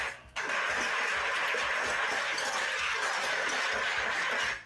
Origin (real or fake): real